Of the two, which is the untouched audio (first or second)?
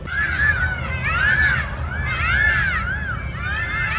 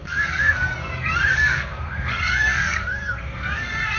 first